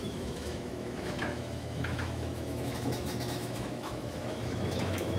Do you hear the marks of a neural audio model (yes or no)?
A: yes